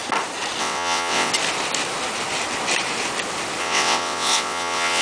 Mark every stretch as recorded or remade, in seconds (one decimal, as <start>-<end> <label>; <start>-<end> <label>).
0.0-0.6 recorded; 0.6-1.3 remade; 1.3-3.6 recorded; 3.6-5.0 remade